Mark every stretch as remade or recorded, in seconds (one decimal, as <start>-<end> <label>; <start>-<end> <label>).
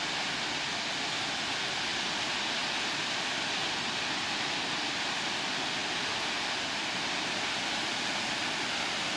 0.0-9.2 recorded